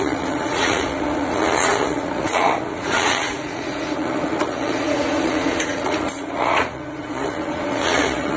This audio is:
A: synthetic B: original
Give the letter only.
A